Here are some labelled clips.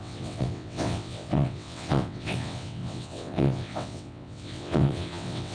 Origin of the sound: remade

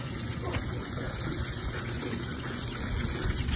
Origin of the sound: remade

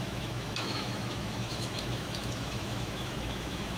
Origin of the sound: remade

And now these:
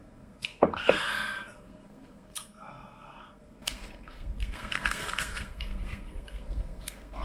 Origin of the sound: remade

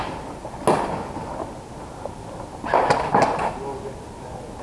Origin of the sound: recorded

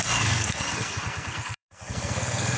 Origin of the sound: remade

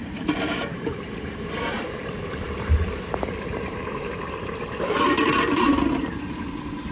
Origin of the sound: remade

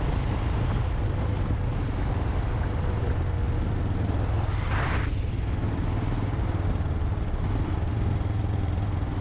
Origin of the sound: recorded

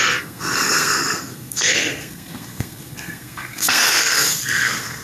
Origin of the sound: remade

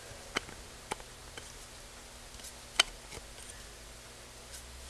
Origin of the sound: recorded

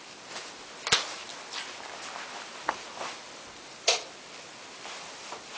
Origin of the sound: recorded